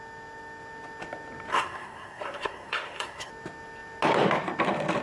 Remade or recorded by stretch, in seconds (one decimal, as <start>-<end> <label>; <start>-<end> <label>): 0.0-1.5 recorded; 1.5-3.3 remade; 3.3-5.0 recorded